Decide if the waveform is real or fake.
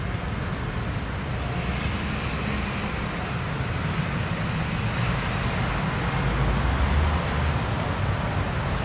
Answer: real